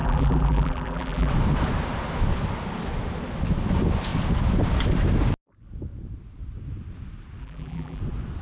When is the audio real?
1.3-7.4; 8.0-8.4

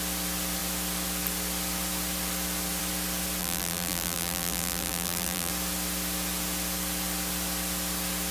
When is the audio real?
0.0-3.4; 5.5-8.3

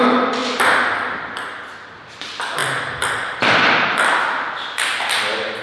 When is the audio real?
0.0-2.6; 4.0-5.6

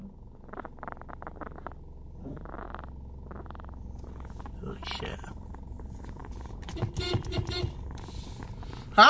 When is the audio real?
0.0-4.8; 5.5-6.2; 6.7-9.1

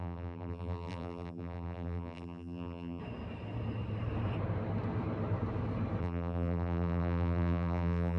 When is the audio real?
3.0-6.0

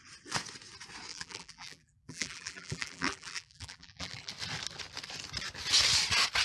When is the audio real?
0.0-1.1; 4.3-6.4

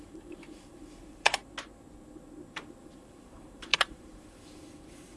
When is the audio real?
1.4-2.8